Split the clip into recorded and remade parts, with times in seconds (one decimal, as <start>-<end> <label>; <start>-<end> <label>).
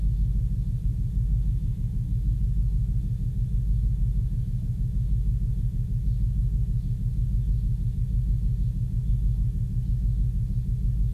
0.0-11.1 recorded